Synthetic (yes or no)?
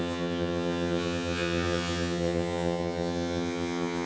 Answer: yes